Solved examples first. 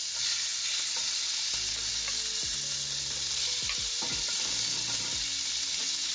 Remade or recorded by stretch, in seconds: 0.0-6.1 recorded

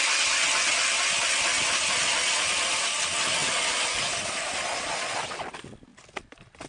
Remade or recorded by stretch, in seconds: 0.0-6.7 recorded

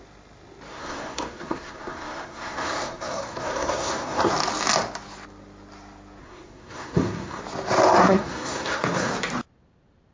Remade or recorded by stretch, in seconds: 0.0-0.7 recorded; 0.7-4.3 remade; 4.3-6.2 recorded; 6.2-7.4 remade; 7.4-8.0 recorded; 8.0-9.1 remade; 9.1-10.1 recorded

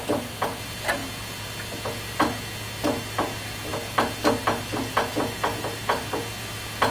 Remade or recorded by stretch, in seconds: 0.0-6.9 recorded

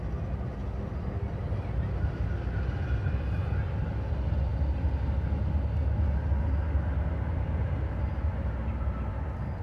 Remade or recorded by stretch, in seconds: 0.0-9.6 recorded